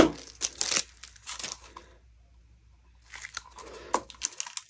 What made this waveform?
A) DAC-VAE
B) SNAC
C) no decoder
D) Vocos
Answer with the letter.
C